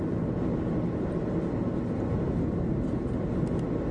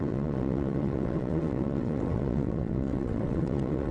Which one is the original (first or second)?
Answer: first